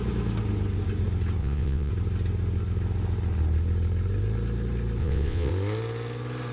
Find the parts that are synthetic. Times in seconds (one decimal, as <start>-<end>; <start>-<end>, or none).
1.4-1.9; 5.0-5.5